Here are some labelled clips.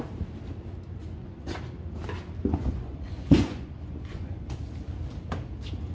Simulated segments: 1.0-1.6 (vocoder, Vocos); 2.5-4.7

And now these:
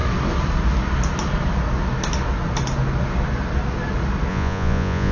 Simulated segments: 4.3-5.1 (vocoder, Vocos)

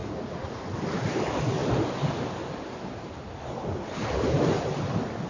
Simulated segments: 0.0-0.6 (vocoder, Vocos)

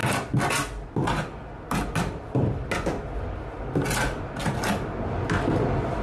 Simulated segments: none

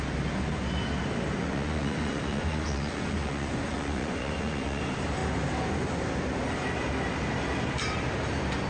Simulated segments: 1.4-4.8 (vocoder, Vocos)

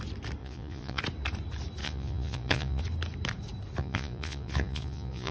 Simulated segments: 0.4-1.0 (vocoder, Vocos); 1.8-2.8; 3.8-5.3

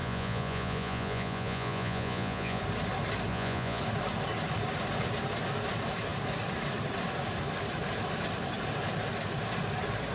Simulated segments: 0.0-2.6 (vocoder, Vocos); 3.3-3.8

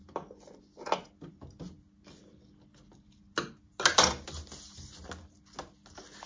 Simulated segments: none